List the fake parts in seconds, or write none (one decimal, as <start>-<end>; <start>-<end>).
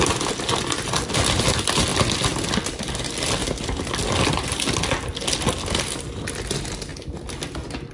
none